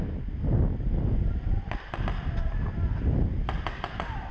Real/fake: real